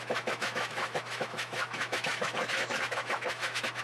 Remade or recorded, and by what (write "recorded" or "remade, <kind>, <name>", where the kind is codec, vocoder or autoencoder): remade, autoencoder, DAC-VAE